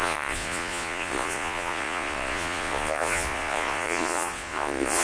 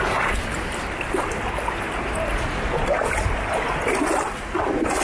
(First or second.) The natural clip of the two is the second